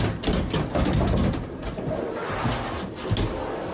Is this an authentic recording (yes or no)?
yes